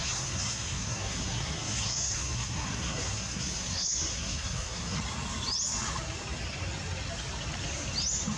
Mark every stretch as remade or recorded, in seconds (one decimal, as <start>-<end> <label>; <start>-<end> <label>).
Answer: 0.0-5.0 remade; 5.0-8.4 recorded

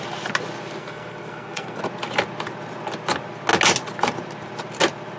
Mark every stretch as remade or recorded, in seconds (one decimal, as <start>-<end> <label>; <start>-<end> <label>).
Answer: 0.0-0.8 recorded; 0.8-1.8 remade; 1.8-5.2 recorded

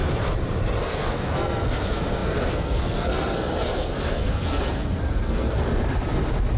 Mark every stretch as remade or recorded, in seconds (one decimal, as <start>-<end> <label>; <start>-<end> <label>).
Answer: 0.0-0.8 recorded; 0.8-5.6 remade; 5.6-6.6 recorded

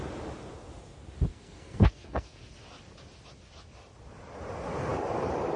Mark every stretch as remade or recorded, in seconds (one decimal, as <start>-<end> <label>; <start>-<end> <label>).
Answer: 0.0-1.3 recorded; 1.3-2.4 remade; 2.4-5.6 recorded